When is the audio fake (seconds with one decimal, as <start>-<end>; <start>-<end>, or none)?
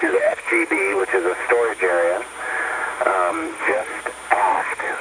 0.0-1.0; 3.3-3.9; 4.5-5.0